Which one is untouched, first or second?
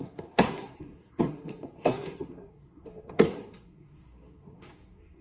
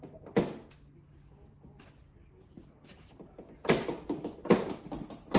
second